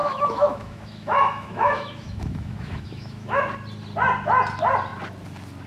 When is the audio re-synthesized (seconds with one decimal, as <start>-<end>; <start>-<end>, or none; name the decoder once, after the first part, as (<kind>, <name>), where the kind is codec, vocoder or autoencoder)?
0.0-3.4 (autoencoder, DAC-VAE)